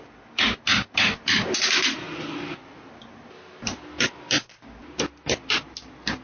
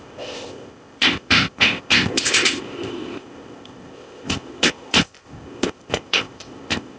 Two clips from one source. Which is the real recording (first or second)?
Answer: first